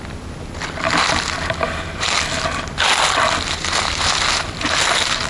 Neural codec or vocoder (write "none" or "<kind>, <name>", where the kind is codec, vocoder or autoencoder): none